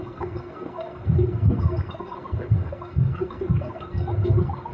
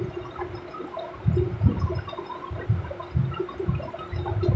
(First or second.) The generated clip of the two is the first